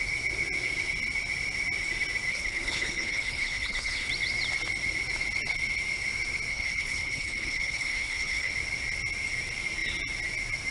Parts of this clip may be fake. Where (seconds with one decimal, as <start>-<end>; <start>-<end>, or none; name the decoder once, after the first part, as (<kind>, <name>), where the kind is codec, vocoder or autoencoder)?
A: 2.3-4.1 (codec, HILCodec); 6.5-8.5